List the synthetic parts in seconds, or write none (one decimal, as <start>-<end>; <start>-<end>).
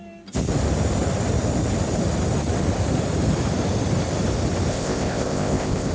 4.7-5.9